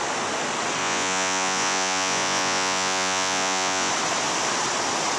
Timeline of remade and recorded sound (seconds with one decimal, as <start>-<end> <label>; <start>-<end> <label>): 0.0-0.8 recorded; 0.8-3.9 remade; 3.9-5.2 recorded